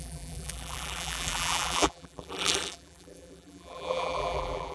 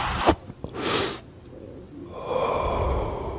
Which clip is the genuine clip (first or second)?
second